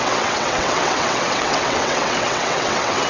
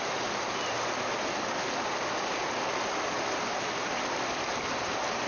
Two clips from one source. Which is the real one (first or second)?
second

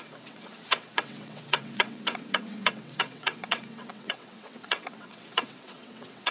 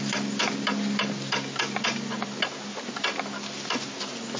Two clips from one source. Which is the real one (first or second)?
second